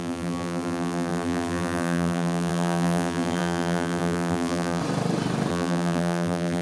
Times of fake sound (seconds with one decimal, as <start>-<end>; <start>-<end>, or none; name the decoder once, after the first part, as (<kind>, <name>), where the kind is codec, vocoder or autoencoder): 0.0-4.8 (vocoder, BigVGAN v2); 5.5-6.6